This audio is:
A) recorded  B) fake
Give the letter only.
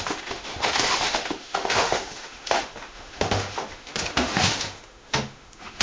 B